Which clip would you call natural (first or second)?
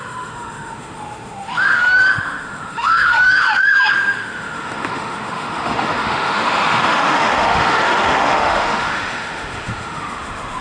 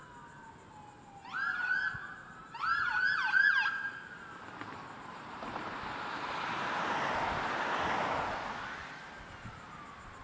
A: second